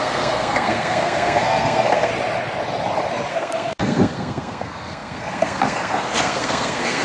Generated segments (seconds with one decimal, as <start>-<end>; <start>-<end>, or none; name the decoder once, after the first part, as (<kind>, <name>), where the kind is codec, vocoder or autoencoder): 0.0-2.1 (codec, SNAC); 3.3-7.0